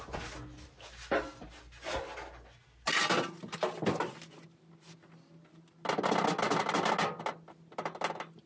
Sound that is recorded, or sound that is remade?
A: recorded